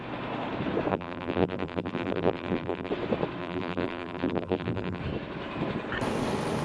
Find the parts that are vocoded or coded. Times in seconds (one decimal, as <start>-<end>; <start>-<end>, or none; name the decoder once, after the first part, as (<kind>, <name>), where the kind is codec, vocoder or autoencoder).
0.9-2.9 (vocoder, BigVGAN v2); 3.4-5.0